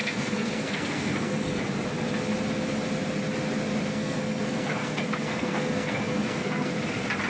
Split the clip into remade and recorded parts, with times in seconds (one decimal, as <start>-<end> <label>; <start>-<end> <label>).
0.0-1.6 remade; 1.6-3.9 recorded; 3.9-6.8 remade; 6.8-7.3 recorded